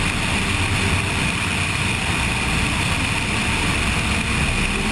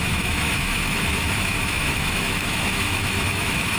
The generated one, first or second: second